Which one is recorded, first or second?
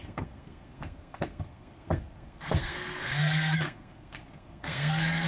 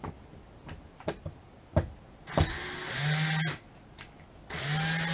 second